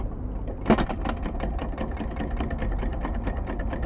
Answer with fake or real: real